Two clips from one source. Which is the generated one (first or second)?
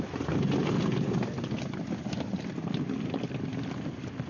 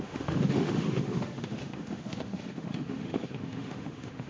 second